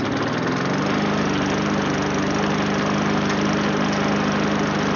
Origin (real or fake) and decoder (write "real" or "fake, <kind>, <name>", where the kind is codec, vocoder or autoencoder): real